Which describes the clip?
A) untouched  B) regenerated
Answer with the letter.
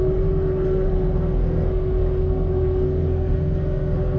B